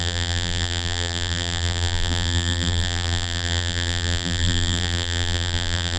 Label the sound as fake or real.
fake